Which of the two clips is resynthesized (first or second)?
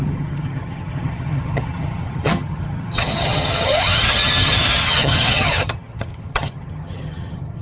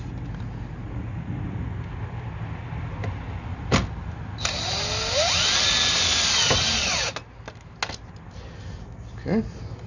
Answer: first